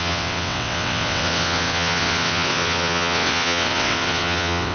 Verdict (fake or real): fake